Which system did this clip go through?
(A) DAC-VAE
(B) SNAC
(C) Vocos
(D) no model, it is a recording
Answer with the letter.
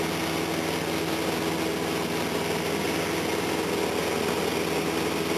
D